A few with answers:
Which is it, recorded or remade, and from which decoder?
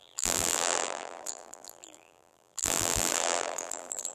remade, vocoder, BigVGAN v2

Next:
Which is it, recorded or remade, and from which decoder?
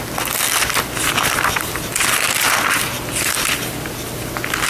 recorded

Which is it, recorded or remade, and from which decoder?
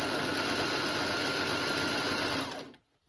recorded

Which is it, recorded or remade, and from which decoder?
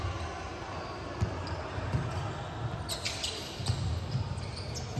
recorded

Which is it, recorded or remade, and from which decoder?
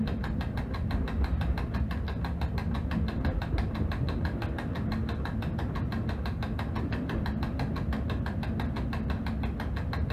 recorded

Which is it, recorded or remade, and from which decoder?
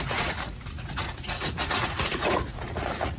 remade, vocoder, Vocos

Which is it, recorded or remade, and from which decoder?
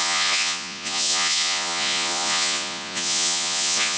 remade, vocoder, Vocos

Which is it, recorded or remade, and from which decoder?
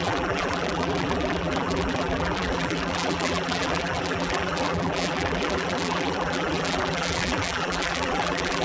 remade, vocoder, BigVGAN v2